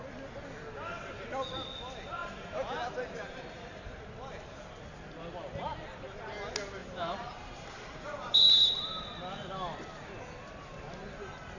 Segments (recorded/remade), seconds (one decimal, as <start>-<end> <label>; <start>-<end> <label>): 0.0-2.2 recorded; 2.2-3.8 remade; 3.8-6.8 recorded; 6.8-9.0 remade; 9.0-11.6 recorded